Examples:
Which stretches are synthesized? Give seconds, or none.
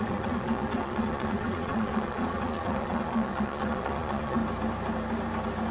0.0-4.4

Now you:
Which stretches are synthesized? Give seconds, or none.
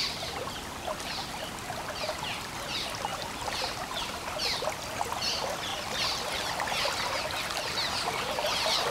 3.1-4.6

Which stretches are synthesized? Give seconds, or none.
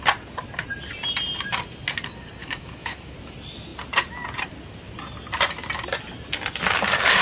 2.4-3.1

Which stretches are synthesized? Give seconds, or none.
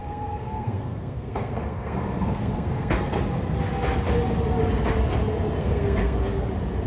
0.0-3.2; 5.6-6.5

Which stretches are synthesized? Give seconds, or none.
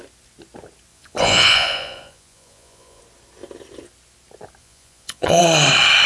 0.9-3.0; 4.6-5.4